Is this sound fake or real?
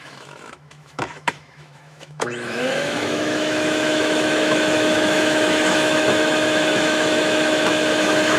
fake